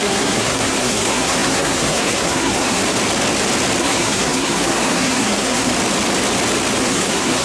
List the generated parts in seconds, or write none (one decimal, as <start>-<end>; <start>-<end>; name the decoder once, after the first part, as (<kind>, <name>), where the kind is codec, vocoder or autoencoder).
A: 0.0-2.8 (codec, SNAC); 3.8-5.7; 6.8-7.4